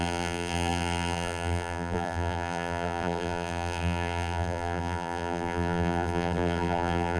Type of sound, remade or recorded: remade